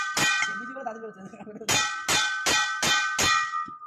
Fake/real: real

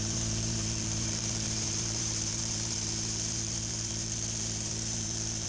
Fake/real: fake